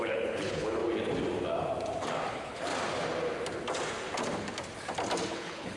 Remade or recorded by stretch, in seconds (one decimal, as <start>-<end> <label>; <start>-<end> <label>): 0.0-0.8 remade; 0.8-2.3 recorded; 2.3-2.7 remade; 2.7-5.3 recorded; 5.3-5.8 remade